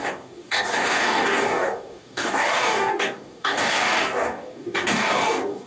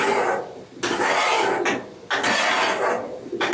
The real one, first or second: second